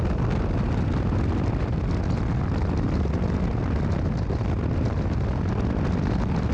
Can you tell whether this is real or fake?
real